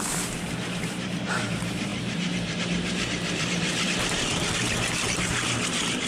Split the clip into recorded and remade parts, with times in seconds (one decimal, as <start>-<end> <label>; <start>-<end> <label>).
0.0-6.1 remade